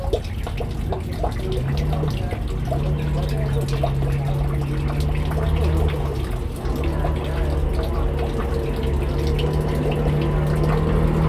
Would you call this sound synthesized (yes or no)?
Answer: no